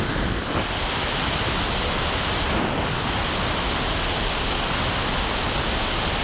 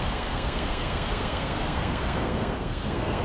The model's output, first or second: second